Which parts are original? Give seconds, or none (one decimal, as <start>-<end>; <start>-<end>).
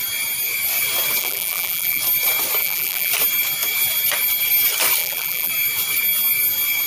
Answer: 0.0-1.2; 2.0-2.6; 3.1-5.0; 5.5-6.9